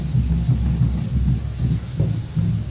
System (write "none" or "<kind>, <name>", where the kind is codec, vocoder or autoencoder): none